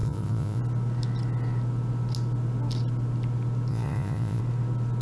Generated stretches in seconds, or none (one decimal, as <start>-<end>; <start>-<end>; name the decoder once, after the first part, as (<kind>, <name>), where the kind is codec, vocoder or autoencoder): 0.0-0.6 (vocoder, Vocos); 3.7-4.4